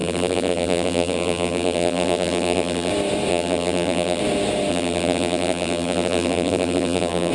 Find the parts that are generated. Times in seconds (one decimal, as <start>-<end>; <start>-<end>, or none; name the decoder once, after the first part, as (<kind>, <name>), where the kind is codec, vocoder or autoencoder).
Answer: 0.0-2.9 (vocoder, BigVGAN v2); 3.3-4.2; 4.7-7.3